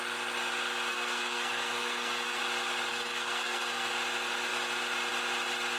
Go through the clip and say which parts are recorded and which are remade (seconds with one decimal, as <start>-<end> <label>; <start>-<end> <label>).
0.0-0.9 recorded; 0.9-2.4 remade; 2.4-2.9 recorded; 2.9-3.9 remade; 3.9-5.8 recorded